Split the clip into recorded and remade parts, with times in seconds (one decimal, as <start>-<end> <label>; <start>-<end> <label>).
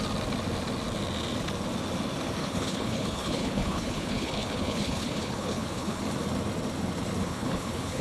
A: 0.0-2.4 recorded; 2.4-6.0 remade; 6.0-7.2 recorded; 7.2-8.0 remade